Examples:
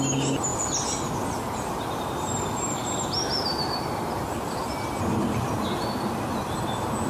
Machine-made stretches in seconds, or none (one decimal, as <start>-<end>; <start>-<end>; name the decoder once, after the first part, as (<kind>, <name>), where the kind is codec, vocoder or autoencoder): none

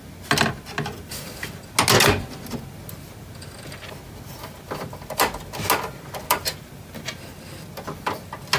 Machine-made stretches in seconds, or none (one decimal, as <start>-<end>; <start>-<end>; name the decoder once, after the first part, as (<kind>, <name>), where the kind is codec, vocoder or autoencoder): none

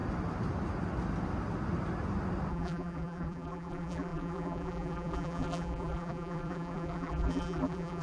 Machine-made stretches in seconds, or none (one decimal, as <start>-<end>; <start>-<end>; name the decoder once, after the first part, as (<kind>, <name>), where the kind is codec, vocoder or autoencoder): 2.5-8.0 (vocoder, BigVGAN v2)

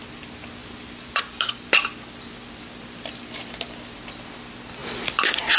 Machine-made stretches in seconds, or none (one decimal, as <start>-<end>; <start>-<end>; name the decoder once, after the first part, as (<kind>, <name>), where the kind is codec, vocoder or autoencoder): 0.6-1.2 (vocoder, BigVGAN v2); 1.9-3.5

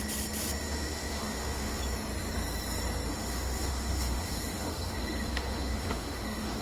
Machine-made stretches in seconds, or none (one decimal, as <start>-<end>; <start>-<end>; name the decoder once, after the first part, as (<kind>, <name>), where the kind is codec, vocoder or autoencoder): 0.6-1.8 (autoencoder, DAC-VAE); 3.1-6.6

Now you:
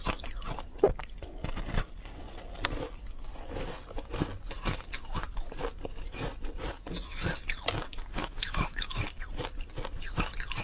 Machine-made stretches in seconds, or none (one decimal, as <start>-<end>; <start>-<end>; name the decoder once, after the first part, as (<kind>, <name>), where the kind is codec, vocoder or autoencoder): 8.2-8.8 (autoencoder, DAC-VAE)